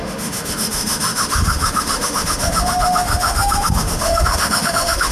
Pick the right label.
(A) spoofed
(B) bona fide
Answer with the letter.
A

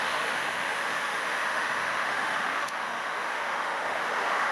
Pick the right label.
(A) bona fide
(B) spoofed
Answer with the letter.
B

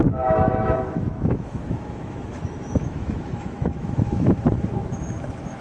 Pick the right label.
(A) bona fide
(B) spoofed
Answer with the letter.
B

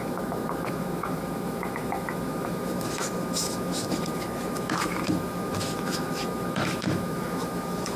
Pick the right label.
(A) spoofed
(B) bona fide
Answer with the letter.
A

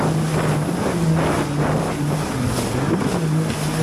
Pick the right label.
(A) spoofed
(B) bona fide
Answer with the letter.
B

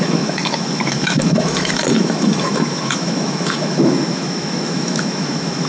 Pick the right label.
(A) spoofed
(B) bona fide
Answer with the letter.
A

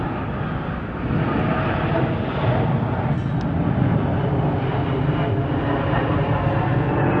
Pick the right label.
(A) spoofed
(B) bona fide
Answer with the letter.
B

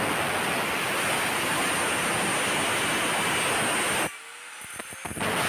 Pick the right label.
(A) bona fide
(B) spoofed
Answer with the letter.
A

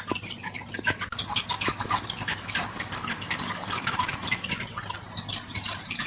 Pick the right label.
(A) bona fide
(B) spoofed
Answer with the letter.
A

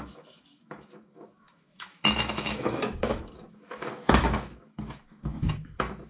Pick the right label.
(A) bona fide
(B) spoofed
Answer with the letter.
B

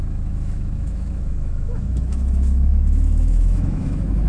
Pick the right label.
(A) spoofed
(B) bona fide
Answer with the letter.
A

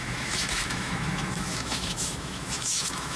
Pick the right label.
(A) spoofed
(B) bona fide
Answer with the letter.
A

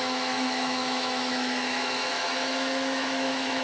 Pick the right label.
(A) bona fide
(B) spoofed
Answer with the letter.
B